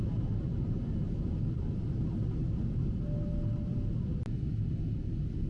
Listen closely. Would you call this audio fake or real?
real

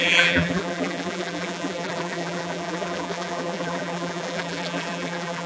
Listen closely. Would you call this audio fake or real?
fake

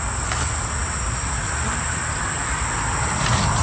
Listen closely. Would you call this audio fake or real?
real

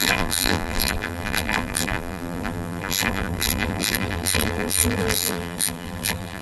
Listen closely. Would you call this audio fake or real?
fake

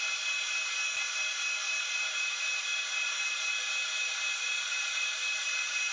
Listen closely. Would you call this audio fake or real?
real